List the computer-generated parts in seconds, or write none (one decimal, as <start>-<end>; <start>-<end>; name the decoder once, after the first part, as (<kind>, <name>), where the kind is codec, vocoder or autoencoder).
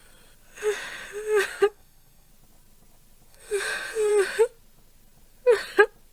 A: 1.5-2.3 (codec, SNAC); 3.3-4.1